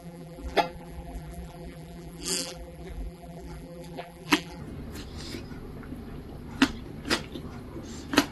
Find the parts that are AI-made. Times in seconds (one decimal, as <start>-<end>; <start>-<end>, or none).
0.0-4.6